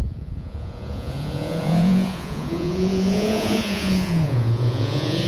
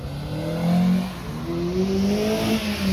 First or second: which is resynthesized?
first